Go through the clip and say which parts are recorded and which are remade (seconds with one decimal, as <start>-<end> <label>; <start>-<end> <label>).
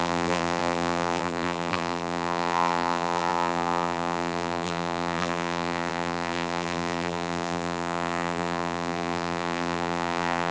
0.0-10.5 remade